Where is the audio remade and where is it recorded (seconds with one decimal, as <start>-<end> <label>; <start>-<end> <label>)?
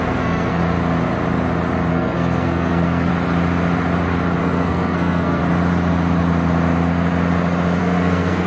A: 0.0-0.6 remade; 0.6-1.9 recorded; 1.9-3.1 remade; 3.1-4.4 recorded; 4.4-5.4 remade; 5.4-7.8 recorded; 7.8-8.5 remade